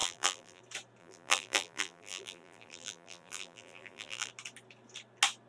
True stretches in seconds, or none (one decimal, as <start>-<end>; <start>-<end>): 0.6-1.0; 4.3-5.5